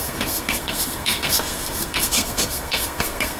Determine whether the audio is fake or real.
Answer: fake